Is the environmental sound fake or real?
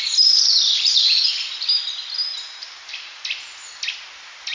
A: real